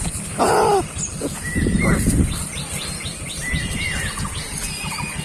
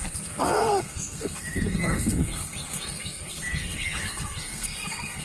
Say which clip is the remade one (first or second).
second